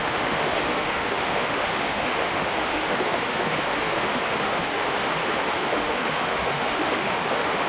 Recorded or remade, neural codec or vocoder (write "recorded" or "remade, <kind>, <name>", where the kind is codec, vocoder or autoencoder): remade, autoencoder, DAC-VAE